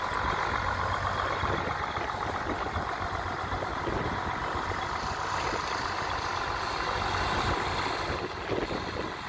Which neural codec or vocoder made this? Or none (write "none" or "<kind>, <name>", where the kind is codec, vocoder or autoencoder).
none